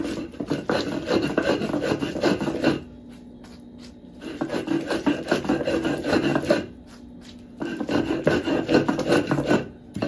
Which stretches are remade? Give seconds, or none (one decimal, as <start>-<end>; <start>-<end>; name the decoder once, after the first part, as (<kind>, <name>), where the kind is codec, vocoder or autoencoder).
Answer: none